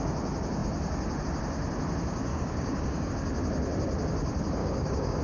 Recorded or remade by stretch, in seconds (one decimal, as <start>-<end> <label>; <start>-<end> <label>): 0.0-2.3 recorded; 2.3-3.1 remade; 3.1-4.6 recorded; 4.6-5.2 remade